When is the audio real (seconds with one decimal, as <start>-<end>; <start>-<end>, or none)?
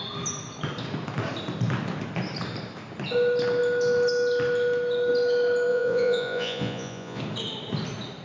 0.0-5.7; 7.2-8.2